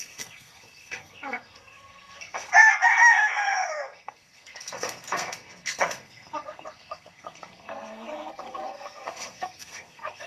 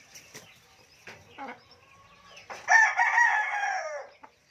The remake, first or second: first